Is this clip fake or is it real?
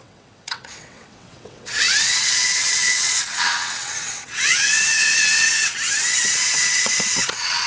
fake